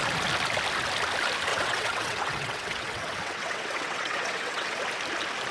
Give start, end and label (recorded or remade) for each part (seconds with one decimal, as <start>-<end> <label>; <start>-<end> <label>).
0.0-1.5 recorded; 1.5-4.8 remade; 4.8-5.5 recorded